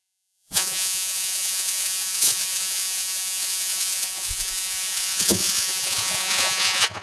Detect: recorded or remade remade